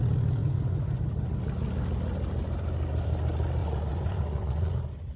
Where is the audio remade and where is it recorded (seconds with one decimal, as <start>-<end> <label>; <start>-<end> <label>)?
0.0-0.4 recorded; 0.4-1.0 remade; 1.0-3.6 recorded; 3.6-4.7 remade; 4.7-5.2 recorded